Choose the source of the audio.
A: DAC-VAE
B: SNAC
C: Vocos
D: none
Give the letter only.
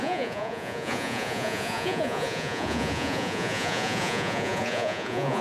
C